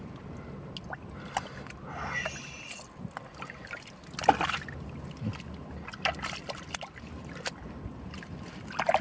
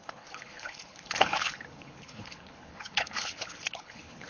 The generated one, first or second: second